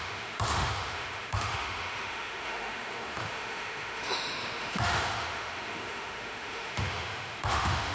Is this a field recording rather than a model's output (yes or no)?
no